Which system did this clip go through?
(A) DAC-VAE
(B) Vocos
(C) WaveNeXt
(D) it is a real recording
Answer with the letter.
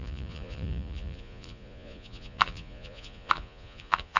B